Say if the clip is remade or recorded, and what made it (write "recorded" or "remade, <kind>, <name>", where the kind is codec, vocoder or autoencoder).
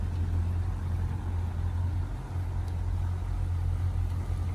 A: recorded